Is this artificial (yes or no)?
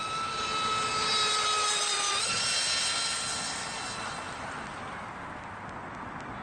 no